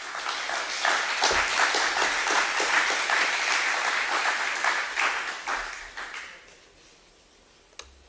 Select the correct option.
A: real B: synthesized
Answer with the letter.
A